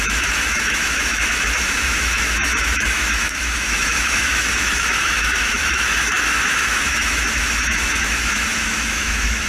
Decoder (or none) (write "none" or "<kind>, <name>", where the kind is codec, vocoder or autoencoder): autoencoder, DAC-VAE